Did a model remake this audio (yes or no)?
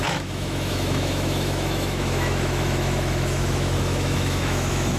yes